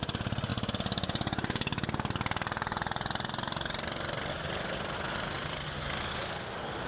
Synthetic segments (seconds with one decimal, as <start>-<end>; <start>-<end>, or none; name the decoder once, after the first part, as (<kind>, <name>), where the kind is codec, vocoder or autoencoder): none